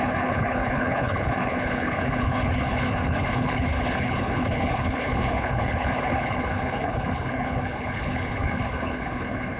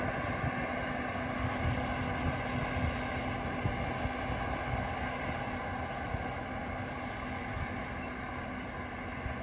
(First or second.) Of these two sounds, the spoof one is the first